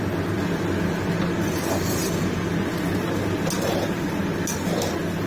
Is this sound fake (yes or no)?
no